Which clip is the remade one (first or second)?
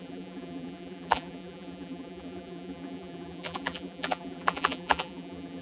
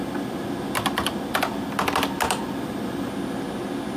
first